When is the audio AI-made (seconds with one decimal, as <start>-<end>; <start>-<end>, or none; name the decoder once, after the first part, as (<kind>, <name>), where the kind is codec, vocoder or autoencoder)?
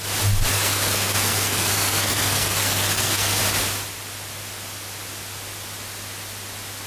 0.5-3.4 (codec, SNAC)